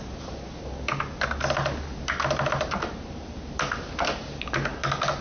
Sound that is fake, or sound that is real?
real